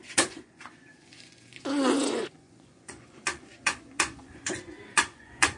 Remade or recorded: remade